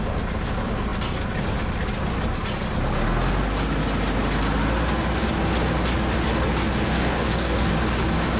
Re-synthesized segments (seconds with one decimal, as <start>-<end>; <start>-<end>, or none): 6.9-7.7